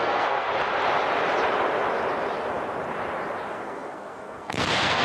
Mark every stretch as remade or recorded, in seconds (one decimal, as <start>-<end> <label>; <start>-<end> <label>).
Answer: 0.0-0.5 remade; 0.5-3.5 recorded; 3.5-5.0 remade